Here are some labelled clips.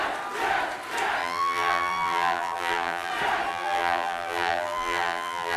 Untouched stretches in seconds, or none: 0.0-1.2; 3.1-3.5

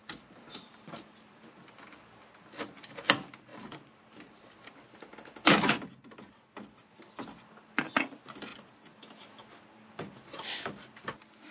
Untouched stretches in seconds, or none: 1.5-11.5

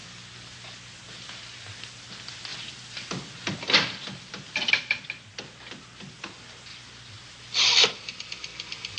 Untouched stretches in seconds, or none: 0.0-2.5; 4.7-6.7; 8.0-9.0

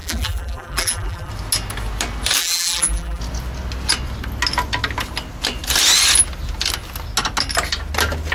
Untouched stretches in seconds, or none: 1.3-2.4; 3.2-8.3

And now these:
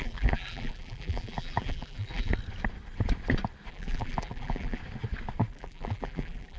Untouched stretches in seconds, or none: 2.3-3.7; 4.8-5.5

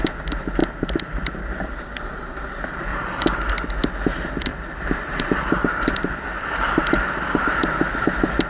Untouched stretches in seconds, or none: 0.0-2.9; 3.5-4.5; 7.7-8.5

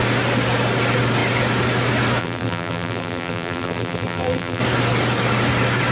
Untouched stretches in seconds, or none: 0.0-2.2; 4.6-5.9

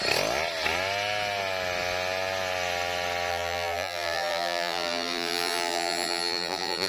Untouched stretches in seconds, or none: 0.0-3.3